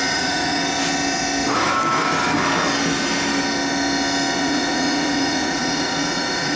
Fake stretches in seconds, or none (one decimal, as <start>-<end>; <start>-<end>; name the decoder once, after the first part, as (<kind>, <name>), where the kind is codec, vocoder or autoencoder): 0.0-0.6 (vocoder, Vocos); 4.4-6.6